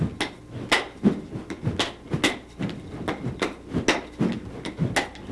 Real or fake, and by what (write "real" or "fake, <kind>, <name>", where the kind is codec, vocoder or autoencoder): real